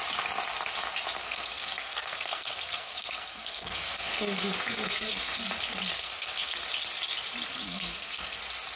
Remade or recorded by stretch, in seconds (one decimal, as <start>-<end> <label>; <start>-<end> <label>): 0.0-1.2 recorded; 1.2-5.5 remade; 5.5-6.0 recorded; 6.0-6.6 remade; 6.6-7.5 recorded; 7.5-8.4 remade; 8.4-8.8 recorded